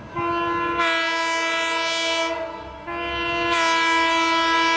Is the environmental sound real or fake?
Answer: real